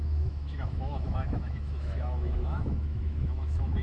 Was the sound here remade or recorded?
remade